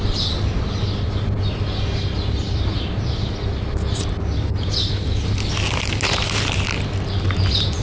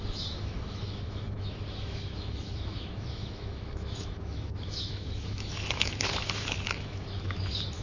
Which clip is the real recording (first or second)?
first